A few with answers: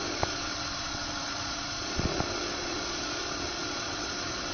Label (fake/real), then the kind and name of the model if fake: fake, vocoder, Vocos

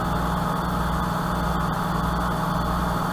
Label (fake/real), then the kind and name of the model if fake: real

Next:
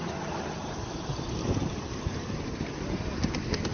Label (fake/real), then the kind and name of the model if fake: real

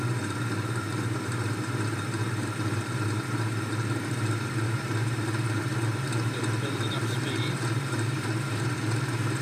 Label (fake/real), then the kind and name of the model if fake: fake, vocoder, BigVGAN v2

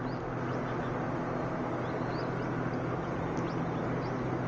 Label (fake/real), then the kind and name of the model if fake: real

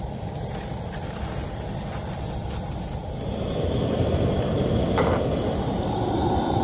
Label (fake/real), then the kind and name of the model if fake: real